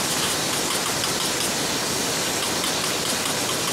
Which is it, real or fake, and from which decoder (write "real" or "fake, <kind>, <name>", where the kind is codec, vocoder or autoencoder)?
real